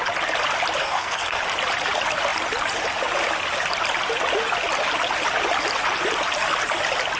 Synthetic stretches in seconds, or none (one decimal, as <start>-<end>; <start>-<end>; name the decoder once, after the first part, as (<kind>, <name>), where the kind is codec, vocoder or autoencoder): 0.8-1.4 (codec, SNAC)